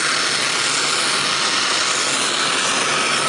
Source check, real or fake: real